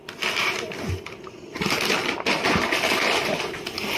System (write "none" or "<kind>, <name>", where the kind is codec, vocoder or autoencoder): none